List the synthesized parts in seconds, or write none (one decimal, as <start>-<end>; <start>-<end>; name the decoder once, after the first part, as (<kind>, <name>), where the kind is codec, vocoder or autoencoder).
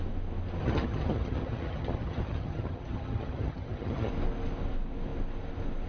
0.6-4.1 (vocoder, HiFi-GAN)